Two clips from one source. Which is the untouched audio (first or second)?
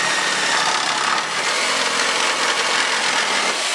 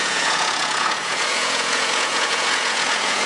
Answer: first